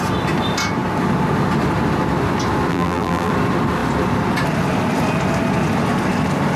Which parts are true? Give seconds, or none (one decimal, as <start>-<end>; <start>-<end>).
0.0-2.7; 3.3-6.6